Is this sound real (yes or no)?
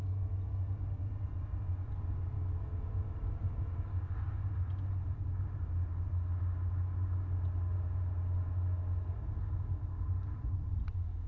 yes